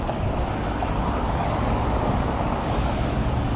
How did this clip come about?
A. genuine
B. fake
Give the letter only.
B